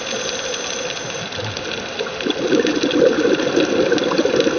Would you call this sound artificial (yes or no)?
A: no